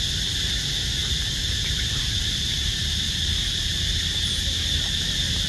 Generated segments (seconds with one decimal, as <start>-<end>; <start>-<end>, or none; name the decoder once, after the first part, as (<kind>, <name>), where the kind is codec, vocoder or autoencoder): 1.0-4.3 (vocoder, BigVGAN v2)